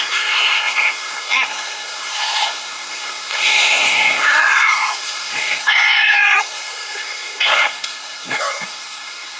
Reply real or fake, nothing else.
fake